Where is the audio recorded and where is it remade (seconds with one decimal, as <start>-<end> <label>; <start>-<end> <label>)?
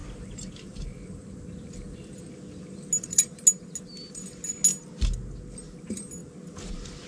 0.0-1.4 remade; 1.4-7.1 recorded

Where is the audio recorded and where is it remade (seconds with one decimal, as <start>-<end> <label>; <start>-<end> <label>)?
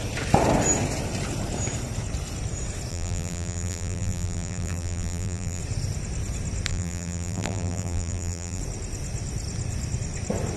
0.0-2.9 recorded; 2.9-5.6 remade; 5.6-6.7 recorded; 6.7-8.6 remade; 8.6-10.6 recorded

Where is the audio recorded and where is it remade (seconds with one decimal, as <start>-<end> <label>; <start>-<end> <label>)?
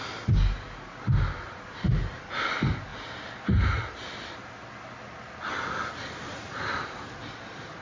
0.0-7.8 recorded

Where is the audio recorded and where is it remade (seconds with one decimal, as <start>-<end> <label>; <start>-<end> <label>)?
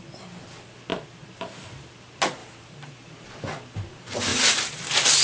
0.0-2.4 recorded; 2.4-3.3 remade; 3.3-4.3 recorded; 4.3-4.8 remade; 4.8-5.2 recorded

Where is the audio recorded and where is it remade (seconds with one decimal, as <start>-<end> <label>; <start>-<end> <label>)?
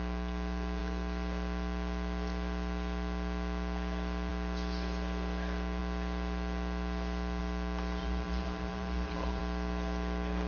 0.0-8.0 recorded; 8.0-9.4 remade; 9.4-10.5 recorded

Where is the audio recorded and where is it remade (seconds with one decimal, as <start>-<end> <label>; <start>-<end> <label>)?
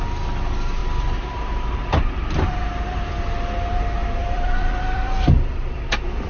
0.0-0.8 recorded; 0.8-1.9 remade; 1.9-4.2 recorded; 4.2-6.3 remade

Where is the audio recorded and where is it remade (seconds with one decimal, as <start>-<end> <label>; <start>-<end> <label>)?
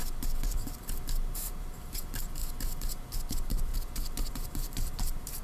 0.0-0.5 recorded; 0.5-2.4 remade; 2.4-3.3 recorded; 3.3-3.7 remade; 3.7-4.3 recorded; 4.3-5.4 remade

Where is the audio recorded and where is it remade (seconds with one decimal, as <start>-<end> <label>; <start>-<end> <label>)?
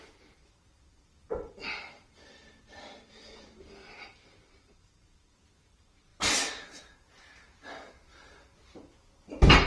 0.0-6.1 remade; 6.1-9.7 recorded